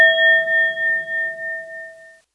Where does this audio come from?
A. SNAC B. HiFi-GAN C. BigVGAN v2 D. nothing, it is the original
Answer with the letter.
D